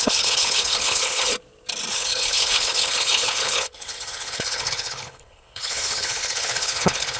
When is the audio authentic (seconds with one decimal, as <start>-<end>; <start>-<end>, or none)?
1.3-1.9

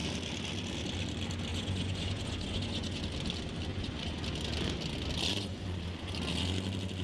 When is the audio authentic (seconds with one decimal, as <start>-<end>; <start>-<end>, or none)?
0.0-1.5; 3.0-3.7; 4.2-5.3; 6.1-7.0

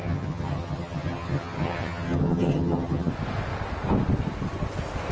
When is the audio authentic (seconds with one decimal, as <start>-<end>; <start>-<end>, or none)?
3.1-5.1